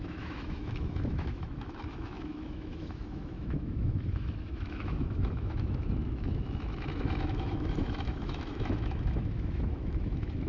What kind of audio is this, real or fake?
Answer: fake